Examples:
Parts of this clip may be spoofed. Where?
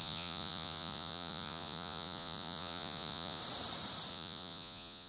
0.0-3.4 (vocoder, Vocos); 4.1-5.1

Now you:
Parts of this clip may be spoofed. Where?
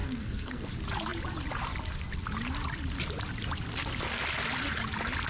0.0-0.7 (codec, SNAC)